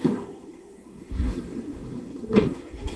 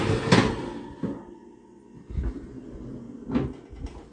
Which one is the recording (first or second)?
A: second